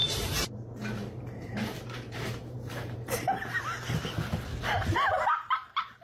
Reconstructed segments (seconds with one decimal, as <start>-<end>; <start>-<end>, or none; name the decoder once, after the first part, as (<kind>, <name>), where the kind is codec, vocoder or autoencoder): 0.0-3.6 (vocoder, BigVGAN v2)